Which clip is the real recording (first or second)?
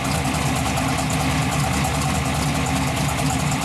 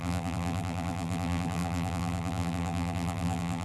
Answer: first